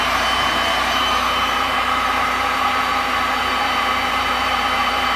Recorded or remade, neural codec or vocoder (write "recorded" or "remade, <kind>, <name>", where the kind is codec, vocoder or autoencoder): remade, vocoder, BigVGAN v2